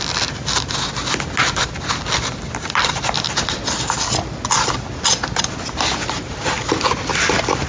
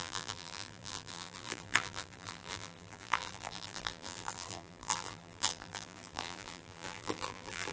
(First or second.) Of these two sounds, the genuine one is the first